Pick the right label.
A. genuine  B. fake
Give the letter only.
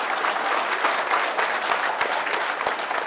A